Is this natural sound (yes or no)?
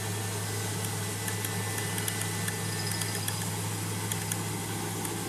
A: yes